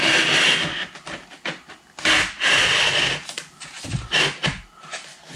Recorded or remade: recorded